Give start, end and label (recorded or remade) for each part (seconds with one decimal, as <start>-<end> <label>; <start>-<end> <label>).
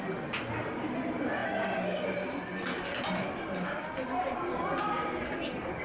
0.0-5.8 recorded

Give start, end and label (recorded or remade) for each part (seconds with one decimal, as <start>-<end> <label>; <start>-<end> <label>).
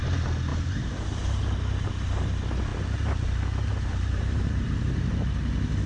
0.0-0.5 recorded; 0.5-1.3 remade; 1.3-2.7 recorded; 2.7-3.3 remade; 3.3-3.9 recorded; 3.9-4.8 remade; 4.8-5.9 recorded